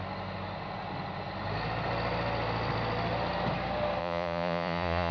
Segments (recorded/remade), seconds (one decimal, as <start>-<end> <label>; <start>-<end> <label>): 0.0-4.0 recorded; 4.0-5.1 remade